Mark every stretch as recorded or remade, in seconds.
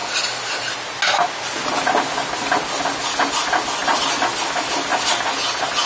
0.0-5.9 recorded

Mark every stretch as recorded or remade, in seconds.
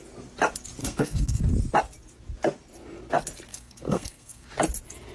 0.0-0.8 recorded; 0.8-1.4 remade; 1.4-3.5 recorded; 3.5-4.5 remade; 4.5-5.1 recorded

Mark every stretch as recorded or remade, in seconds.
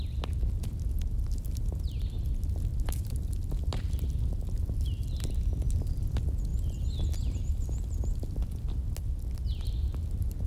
0.0-10.5 recorded